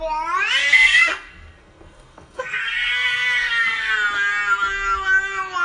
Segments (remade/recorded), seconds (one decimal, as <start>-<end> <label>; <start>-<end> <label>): 0.0-0.6 recorded; 0.6-3.9 remade; 3.9-5.6 recorded